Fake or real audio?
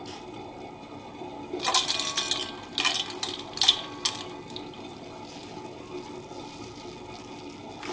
real